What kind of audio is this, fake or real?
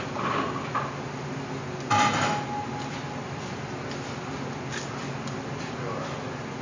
real